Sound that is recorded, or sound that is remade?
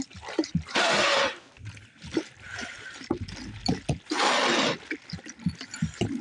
recorded